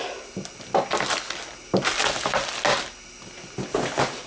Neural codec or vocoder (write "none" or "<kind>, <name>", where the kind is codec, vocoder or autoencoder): none